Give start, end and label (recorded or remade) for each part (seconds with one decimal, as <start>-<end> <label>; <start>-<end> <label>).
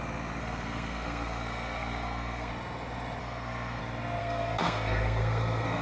0.0-0.4 recorded; 0.4-2.5 remade; 2.5-3.2 recorded; 3.2-3.8 remade; 3.8-4.2 recorded; 4.2-5.8 remade